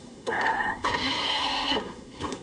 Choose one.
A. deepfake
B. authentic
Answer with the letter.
A